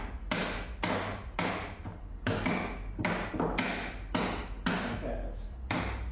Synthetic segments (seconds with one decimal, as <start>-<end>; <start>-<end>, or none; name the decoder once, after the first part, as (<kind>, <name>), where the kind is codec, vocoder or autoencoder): none